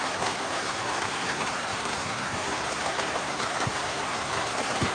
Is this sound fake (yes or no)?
yes